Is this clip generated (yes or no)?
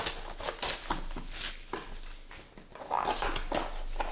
no